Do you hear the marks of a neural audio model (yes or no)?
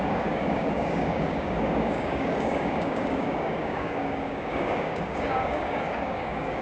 yes